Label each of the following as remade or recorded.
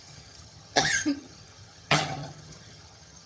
remade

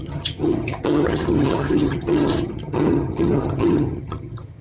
remade